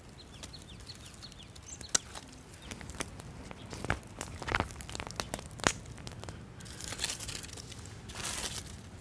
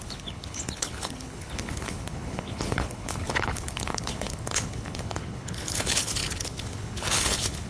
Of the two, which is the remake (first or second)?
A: second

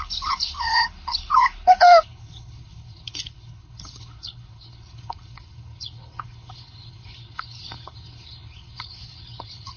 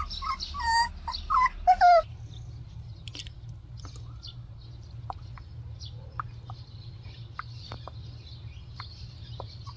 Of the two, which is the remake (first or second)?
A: first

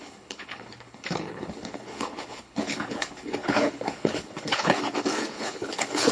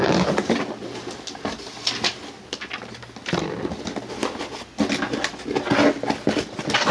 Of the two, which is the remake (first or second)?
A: first